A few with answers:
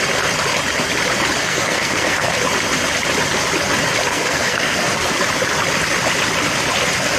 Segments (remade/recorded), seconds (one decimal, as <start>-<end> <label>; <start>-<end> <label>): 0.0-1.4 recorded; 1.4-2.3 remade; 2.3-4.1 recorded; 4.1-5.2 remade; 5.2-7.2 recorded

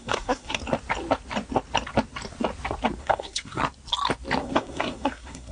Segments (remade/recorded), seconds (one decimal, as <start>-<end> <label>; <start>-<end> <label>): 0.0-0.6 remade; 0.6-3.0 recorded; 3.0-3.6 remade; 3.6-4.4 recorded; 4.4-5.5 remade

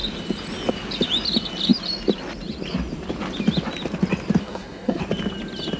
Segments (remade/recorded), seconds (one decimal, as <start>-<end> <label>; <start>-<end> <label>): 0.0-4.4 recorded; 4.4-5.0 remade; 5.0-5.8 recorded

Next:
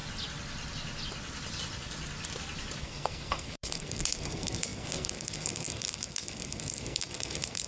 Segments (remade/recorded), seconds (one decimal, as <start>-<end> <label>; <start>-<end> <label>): 0.0-2.8 recorded; 2.8-7.7 remade

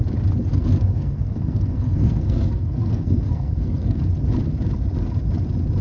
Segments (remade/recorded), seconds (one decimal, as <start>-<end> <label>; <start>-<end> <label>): 0.0-0.5 recorded; 0.5-4.0 remade; 4.0-5.8 recorded

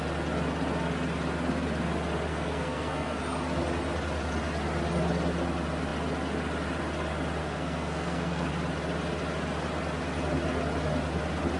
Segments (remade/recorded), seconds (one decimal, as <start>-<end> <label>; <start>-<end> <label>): 0.0-2.3 recorded; 2.3-3.2 remade; 3.2-7.4 recorded; 7.4-8.5 remade; 8.5-11.6 recorded

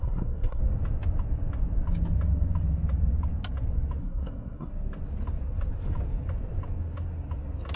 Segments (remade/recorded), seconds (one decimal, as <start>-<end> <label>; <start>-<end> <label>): 0.0-0.6 remade; 0.6-4.0 recorded; 4.0-4.7 remade; 4.7-7.8 recorded